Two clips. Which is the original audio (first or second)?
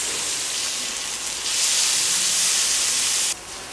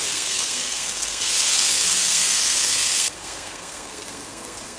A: first